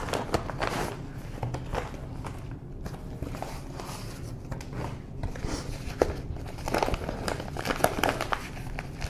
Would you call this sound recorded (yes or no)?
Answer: yes